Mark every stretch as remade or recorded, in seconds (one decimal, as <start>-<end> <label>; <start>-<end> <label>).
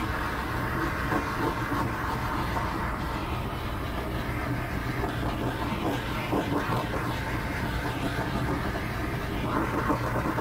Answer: 0.0-10.4 recorded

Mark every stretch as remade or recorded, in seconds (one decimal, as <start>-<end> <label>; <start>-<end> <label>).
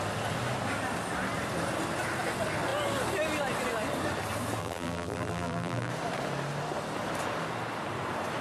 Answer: 0.0-4.6 recorded; 4.6-5.9 remade; 5.9-8.4 recorded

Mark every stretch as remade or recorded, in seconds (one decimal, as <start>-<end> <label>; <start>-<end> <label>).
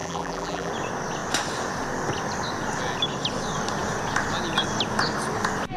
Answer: 0.0-0.7 remade; 0.7-5.8 recorded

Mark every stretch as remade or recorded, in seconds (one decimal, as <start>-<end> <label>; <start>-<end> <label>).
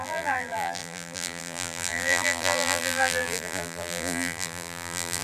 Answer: 0.0-5.2 remade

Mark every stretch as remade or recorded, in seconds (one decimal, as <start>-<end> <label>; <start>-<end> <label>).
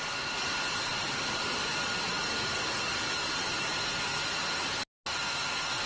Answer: 0.0-0.9 recorded; 0.9-2.1 remade; 2.1-4.1 recorded; 4.1-4.7 remade; 4.7-5.9 recorded